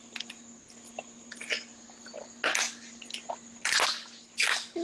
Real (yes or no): yes